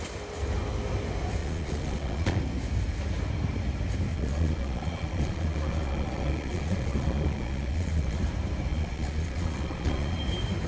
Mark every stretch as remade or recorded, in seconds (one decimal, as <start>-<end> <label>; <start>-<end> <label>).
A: 0.0-1.4 recorded; 1.4-2.4 remade; 2.4-4.1 recorded; 4.1-8.2 remade; 8.2-8.7 recorded; 8.7-10.2 remade; 10.2-10.7 recorded